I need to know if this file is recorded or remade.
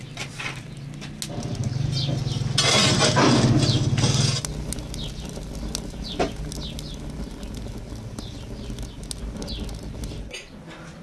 recorded